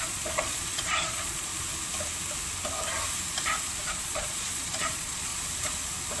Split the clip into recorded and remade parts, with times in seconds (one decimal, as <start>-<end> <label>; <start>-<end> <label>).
0.0-1.5 remade; 1.5-3.8 recorded; 3.8-5.3 remade; 5.3-6.2 recorded